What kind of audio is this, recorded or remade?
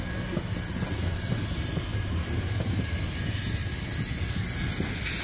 recorded